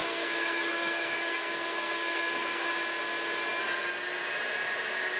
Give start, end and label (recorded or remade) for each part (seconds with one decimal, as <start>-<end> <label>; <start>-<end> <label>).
0.0-2.7 remade; 2.7-5.2 recorded